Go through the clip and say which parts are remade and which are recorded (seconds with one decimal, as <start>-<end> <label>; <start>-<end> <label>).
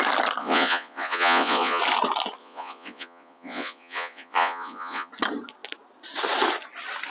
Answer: 0.0-0.4 recorded; 0.4-1.8 remade; 1.8-2.4 recorded; 2.4-5.1 remade; 5.1-7.1 recorded